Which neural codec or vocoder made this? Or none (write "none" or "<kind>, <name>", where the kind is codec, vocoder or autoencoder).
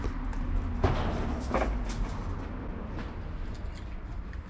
none